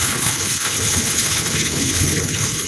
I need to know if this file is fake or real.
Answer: fake